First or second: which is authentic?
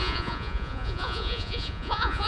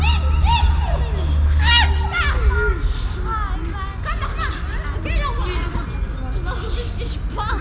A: second